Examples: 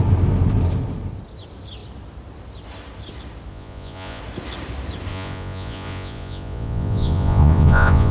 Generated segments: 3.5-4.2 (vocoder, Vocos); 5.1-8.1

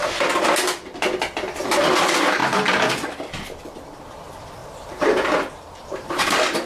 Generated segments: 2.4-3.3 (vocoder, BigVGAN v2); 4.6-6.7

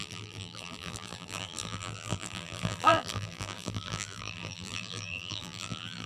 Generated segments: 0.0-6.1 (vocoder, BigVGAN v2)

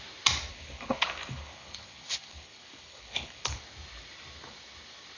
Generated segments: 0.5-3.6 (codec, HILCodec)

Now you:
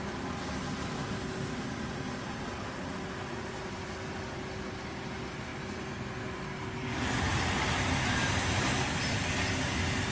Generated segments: none

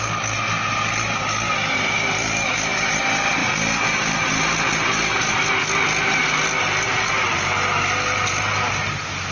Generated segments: 2.2-2.9 (autoencoder, DAC-VAE)